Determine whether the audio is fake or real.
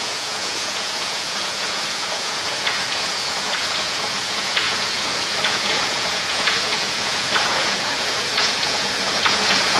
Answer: fake